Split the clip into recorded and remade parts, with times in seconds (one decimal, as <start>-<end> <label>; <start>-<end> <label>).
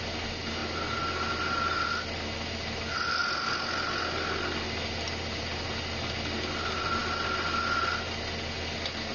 0.0-9.1 recorded